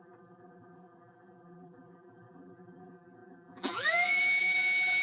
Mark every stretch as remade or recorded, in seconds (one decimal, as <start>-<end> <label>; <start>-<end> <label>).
0.0-5.0 remade